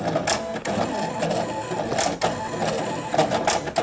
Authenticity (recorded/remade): recorded